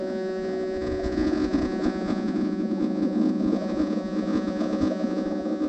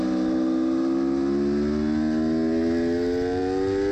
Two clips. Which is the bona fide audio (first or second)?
second